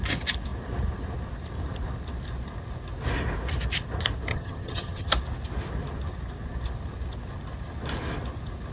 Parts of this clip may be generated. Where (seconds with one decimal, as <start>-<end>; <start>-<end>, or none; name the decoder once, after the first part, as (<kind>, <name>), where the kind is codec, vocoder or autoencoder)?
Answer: 4.3-5.1 (vocoder, HiFi-GAN)